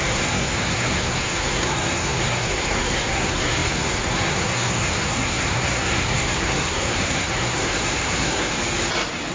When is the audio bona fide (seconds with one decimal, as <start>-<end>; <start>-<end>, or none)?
8.6-9.3